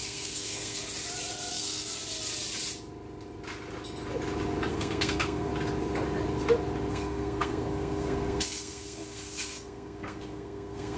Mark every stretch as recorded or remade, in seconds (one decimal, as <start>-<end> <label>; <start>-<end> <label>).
0.0-0.8 remade; 0.8-1.5 recorded; 1.5-2.0 remade; 2.0-4.7 recorded; 4.7-5.5 remade; 5.5-6.9 recorded; 6.9-11.0 remade